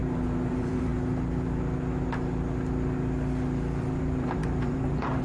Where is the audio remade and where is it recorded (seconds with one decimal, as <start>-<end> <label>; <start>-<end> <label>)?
0.0-0.5 recorded; 0.5-0.9 remade; 0.9-3.8 recorded; 3.8-5.2 remade